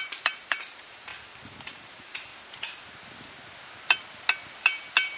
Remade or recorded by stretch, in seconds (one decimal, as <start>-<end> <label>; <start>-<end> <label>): 0.0-1.1 remade; 1.1-1.7 recorded; 1.7-2.3 remade; 2.3-5.2 recorded